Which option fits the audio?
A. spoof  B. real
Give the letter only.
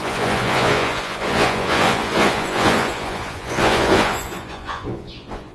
A